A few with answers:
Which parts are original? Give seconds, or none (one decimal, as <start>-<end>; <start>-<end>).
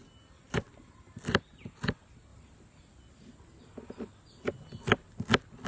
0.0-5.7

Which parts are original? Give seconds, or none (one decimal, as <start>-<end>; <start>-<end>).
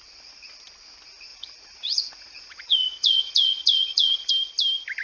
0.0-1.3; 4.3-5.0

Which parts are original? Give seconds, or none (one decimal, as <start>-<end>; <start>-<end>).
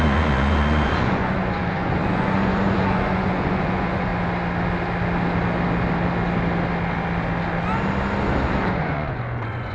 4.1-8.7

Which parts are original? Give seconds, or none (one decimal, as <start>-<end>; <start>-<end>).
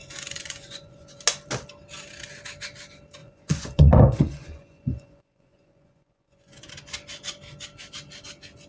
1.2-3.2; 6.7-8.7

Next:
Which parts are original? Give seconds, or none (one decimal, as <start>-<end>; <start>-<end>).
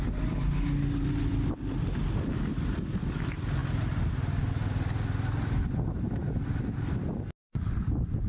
0.0-8.3